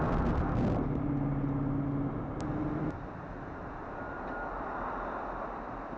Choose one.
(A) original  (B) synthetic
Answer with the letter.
A